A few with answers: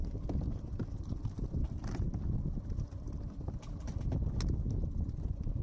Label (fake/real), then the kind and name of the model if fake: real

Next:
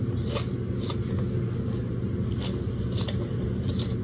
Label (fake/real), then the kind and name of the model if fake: real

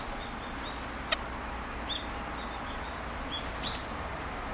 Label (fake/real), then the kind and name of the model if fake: real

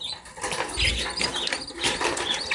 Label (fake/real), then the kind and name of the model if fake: real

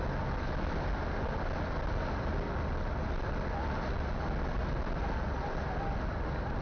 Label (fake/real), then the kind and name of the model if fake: real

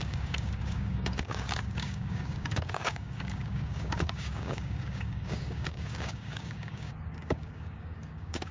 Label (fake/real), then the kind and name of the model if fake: fake, codec, DAC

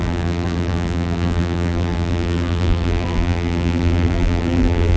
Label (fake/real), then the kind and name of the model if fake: fake, vocoder, BigVGAN v2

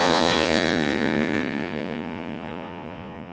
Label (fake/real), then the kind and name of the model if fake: fake, vocoder, Vocos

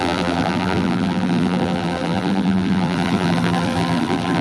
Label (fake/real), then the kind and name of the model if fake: fake, vocoder, BigVGAN v2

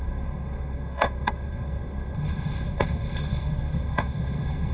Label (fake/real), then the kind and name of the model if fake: fake, codec, SNAC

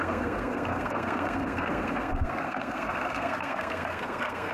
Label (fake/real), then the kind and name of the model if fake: fake, codec, SNAC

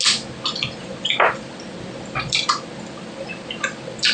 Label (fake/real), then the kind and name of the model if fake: real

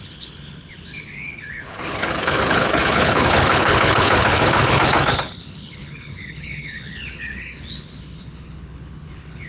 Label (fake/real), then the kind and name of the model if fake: fake, codec, HILCodec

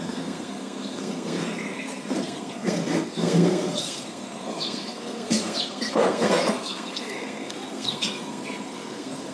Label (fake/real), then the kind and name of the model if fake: fake, codec, SNAC